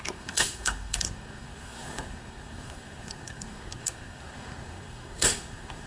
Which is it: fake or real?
fake